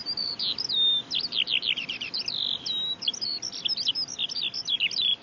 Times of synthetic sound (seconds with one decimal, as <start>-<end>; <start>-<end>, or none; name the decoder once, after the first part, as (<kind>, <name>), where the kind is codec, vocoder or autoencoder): 0.0-1.0 (vocoder, BigVGAN v2)